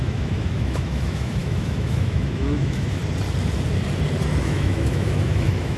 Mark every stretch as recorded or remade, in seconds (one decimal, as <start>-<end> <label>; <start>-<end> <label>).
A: 0.0-3.0 remade; 3.0-4.4 recorded; 4.4-5.8 remade